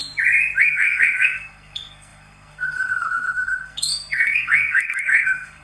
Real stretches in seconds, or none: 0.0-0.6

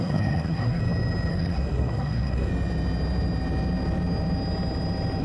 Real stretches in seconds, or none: 0.8-1.3; 2.5-5.2

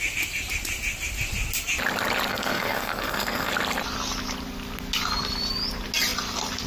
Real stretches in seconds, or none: 0.0-2.3; 3.5-6.7

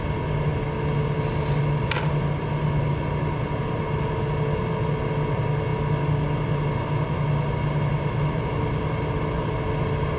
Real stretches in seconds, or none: 0.0-10.2

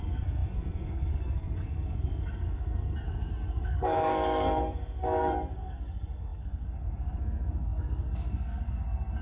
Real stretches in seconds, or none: none

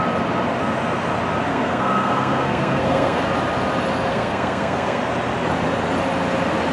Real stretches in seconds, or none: 0.0-1.5; 3.2-4.1; 5.0-6.7